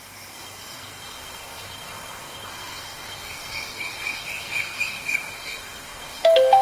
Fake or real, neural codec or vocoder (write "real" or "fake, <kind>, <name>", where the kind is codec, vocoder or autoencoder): fake, codec, SNAC